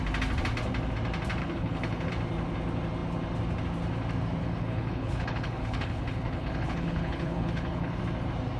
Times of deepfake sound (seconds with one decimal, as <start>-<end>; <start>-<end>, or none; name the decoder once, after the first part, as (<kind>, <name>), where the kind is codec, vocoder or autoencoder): 1.4-2.1 (codec, HILCodec); 4.4-8.0